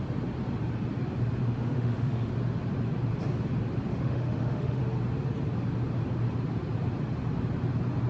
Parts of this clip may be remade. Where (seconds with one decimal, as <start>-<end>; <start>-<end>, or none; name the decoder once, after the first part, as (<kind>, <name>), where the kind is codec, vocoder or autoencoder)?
1.4-2.3 (autoencoder, DAC-VAE); 3.9-4.8